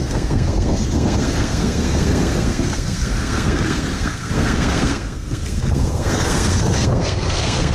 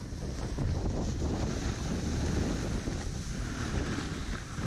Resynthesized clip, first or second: first